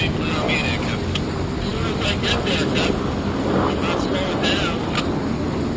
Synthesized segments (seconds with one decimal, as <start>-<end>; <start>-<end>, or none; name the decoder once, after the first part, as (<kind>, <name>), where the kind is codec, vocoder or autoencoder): none